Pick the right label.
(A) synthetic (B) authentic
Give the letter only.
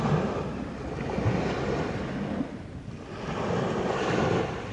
B